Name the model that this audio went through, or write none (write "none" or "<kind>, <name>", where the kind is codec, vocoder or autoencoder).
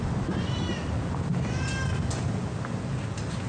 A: none